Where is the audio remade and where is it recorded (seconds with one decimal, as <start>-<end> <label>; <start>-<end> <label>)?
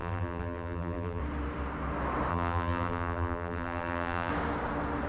0.0-1.2 remade; 1.2-2.3 recorded; 2.3-4.3 remade; 4.3-5.1 recorded